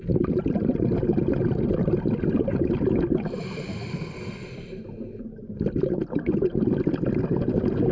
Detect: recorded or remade recorded